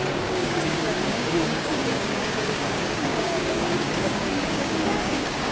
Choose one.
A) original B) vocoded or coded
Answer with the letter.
B